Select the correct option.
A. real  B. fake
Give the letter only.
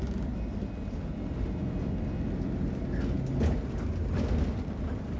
A